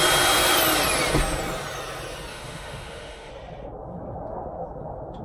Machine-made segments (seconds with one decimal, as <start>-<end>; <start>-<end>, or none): 2.3-3.3